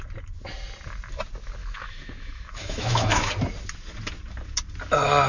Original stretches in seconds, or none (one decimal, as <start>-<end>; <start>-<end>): 0.0-1.6; 3.3-5.3

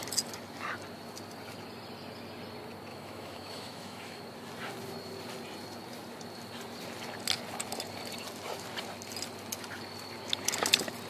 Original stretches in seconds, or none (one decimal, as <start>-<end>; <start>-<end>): 0.0-2.9; 4.2-11.1

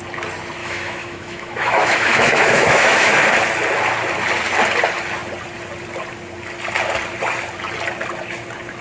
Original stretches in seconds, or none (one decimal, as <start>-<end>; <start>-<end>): 0.0-0.6; 3.1-8.8

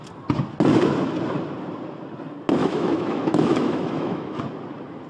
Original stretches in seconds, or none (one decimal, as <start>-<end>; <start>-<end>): 0.0-2.6; 4.4-5.1

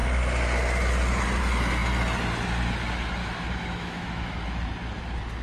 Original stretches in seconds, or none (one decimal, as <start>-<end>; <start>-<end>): 0.0-3.2; 4.3-5.4